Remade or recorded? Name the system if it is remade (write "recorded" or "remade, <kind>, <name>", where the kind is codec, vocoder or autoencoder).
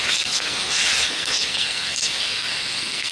remade, codec, SNAC